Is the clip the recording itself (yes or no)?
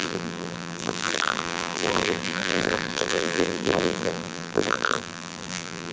no